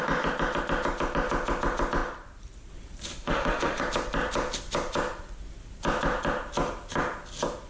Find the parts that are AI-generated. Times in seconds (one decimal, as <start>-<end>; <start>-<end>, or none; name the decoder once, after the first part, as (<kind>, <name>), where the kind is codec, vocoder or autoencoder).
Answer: 3.1-3.8 (autoencoder, DAC-VAE)